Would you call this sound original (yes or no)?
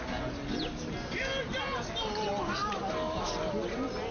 yes